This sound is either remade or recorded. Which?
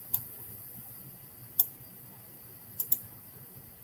remade